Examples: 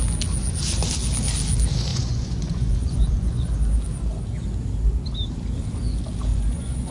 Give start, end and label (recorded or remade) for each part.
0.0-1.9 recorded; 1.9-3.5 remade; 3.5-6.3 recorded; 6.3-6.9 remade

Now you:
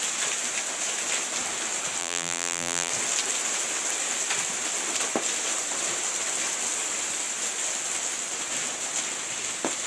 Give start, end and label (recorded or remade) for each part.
0.0-2.0 recorded; 2.0-2.9 remade; 2.9-9.9 recorded

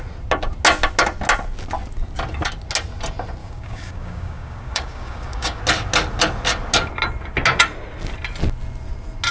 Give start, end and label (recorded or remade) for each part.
0.0-3.4 recorded; 3.4-5.6 remade; 5.6-9.3 recorded

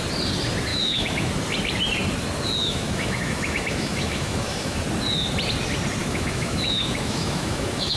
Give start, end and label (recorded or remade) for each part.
0.0-0.7 recorded; 0.7-1.3 remade; 1.3-2.6 recorded; 2.6-4.8 remade; 4.8-6.0 recorded; 6.0-8.0 remade

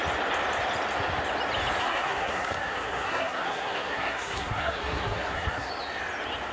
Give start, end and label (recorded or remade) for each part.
0.0-1.8 recorded; 1.8-5.7 remade; 5.7-6.5 recorded

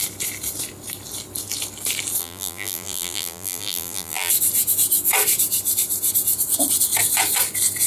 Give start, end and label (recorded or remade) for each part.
0.0-2.2 recorded; 2.2-4.3 remade; 4.3-7.9 recorded

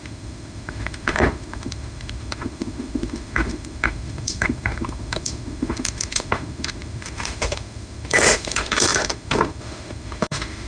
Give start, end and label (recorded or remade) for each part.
0.0-10.7 remade

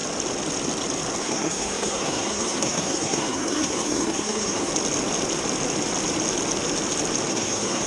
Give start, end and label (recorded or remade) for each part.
0.0-1.2 recorded; 1.2-4.7 remade; 4.7-7.3 recorded; 7.3-7.9 remade